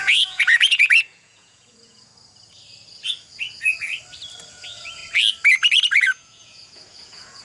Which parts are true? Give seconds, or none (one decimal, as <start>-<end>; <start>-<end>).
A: 2.1-4.5; 5.0-6.0